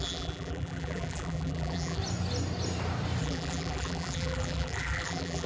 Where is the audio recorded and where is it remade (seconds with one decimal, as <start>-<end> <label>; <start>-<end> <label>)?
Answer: 0.0-2.0 remade; 2.0-3.2 recorded; 3.2-5.5 remade